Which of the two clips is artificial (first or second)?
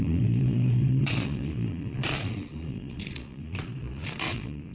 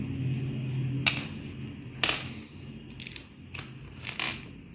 first